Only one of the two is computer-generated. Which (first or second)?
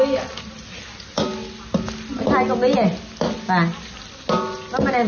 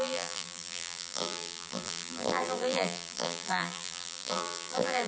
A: second